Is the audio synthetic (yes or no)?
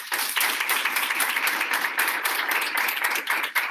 yes